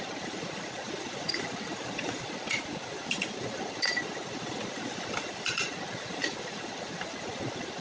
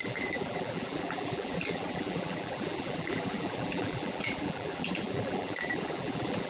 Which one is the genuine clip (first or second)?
first